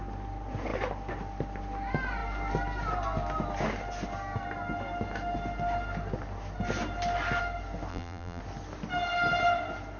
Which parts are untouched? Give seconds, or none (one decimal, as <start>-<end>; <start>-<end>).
0.0-7.9; 8.4-10.0